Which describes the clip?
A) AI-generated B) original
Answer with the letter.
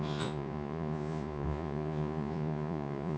A